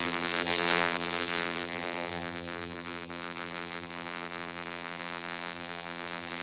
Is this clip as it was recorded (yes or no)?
no